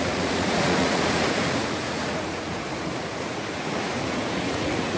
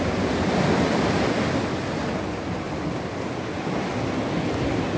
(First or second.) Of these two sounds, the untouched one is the second